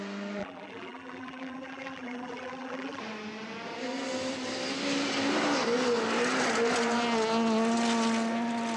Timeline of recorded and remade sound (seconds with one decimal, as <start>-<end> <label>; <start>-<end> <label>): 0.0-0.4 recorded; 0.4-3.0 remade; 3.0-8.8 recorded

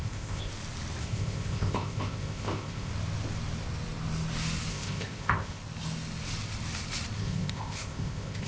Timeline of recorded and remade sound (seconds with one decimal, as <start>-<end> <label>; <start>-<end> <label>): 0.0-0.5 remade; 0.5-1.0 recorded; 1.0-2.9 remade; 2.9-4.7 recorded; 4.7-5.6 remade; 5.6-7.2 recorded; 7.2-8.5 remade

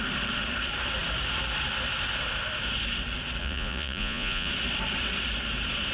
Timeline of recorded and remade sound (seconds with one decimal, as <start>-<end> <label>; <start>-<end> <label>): 0.0-3.4 recorded; 3.4-4.5 remade; 4.5-5.9 recorded